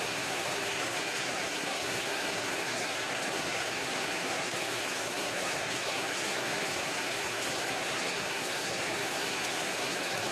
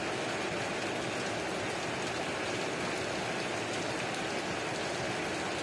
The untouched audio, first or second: second